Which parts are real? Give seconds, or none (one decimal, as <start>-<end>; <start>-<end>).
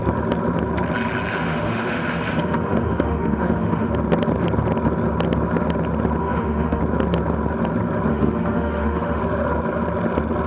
0.0-1.3; 3.9-6.2; 6.8-8.1; 9.2-10.5